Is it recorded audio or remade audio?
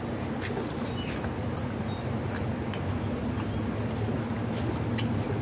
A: recorded